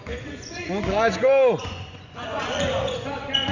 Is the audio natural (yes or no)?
no